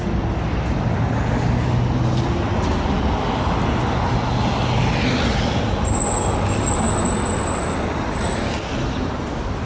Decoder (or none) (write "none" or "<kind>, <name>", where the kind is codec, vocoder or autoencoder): none